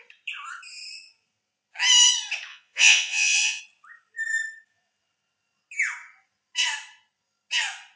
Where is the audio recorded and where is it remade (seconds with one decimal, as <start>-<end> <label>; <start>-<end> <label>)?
0.0-2.5 recorded; 2.5-3.6 remade; 3.6-8.0 recorded